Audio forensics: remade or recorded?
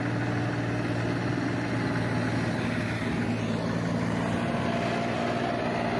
recorded